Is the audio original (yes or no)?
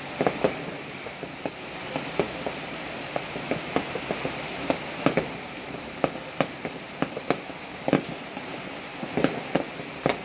yes